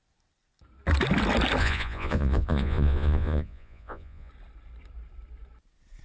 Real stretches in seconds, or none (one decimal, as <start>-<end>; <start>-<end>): 0.0-1.6; 4.3-6.0